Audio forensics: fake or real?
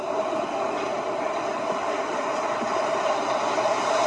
real